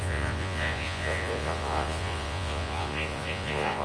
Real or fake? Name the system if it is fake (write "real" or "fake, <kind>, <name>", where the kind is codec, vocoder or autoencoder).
fake, vocoder, Vocos